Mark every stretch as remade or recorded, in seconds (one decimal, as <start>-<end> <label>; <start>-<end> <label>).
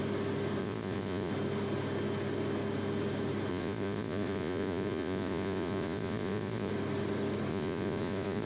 0.0-0.6 recorded; 0.6-1.3 remade; 1.3-3.5 recorded; 3.5-6.7 remade; 6.7-7.5 recorded; 7.5-8.5 remade